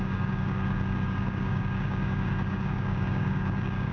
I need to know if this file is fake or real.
fake